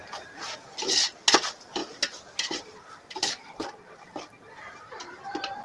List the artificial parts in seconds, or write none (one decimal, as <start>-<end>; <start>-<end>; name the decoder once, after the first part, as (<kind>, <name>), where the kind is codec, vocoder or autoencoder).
0.0-0.9 (vocoder, BigVGAN v2)